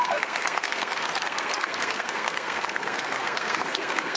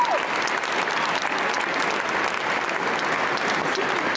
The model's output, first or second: first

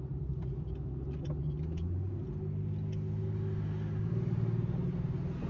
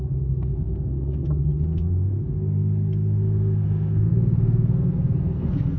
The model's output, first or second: second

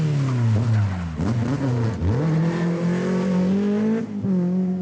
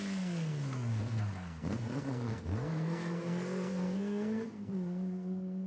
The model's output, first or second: second